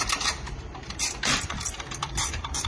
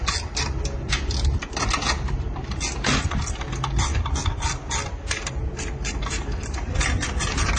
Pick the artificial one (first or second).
first